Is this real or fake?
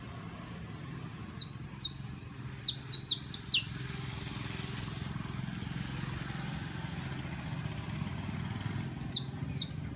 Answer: real